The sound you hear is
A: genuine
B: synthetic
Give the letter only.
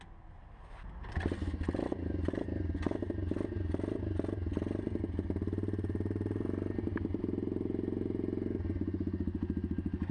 A